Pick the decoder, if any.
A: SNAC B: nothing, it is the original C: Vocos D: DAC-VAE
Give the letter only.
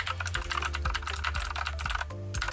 B